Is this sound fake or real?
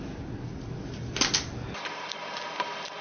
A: real